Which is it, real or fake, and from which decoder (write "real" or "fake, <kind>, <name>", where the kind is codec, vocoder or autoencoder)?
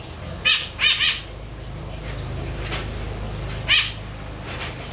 real